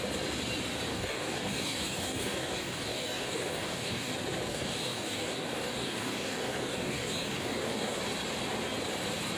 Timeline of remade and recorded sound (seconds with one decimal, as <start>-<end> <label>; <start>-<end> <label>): 0.0-0.9 recorded; 0.9-4.1 remade; 4.1-4.5 recorded; 4.5-8.0 remade; 8.0-9.4 recorded